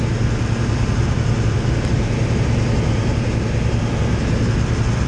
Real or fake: real